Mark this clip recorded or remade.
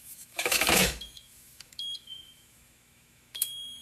remade